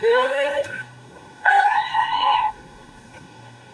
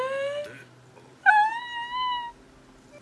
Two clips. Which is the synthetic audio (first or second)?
first